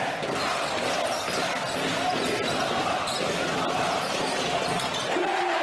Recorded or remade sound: recorded